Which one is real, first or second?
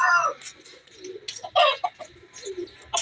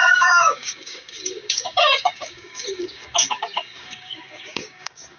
first